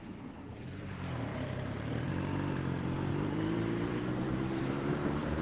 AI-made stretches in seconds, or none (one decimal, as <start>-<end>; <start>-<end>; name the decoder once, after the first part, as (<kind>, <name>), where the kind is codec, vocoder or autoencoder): 0.0-5.4 (vocoder, BigVGAN v2)